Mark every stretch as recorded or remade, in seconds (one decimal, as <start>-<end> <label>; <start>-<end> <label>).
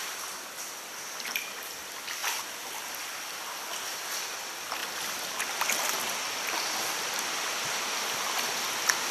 0.0-2.2 recorded; 2.2-2.9 remade; 2.9-9.1 recorded